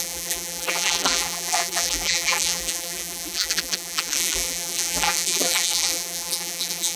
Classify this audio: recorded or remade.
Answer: remade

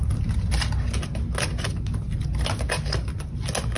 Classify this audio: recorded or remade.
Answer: recorded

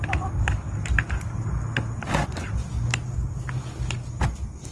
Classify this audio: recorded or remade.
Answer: recorded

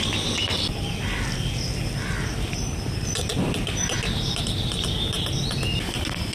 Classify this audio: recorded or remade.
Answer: recorded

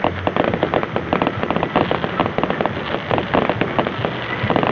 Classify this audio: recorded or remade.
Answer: recorded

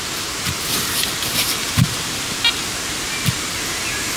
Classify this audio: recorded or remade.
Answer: remade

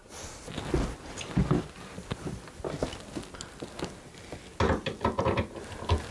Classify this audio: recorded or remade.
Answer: recorded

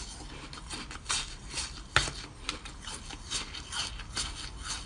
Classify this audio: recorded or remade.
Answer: recorded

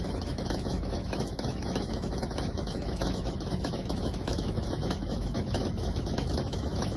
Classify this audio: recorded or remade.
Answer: remade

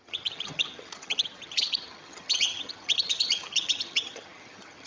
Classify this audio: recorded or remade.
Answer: remade